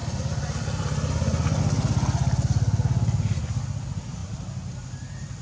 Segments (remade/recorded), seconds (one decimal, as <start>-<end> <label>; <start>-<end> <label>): 0.0-1.6 remade; 1.6-4.2 recorded; 4.2-5.4 remade